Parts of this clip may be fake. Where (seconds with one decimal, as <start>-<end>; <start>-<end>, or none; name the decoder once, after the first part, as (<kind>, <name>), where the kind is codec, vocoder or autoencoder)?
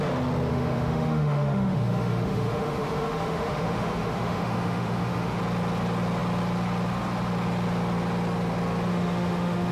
0.5-5.4 (autoencoder, DAC-VAE); 8.9-9.7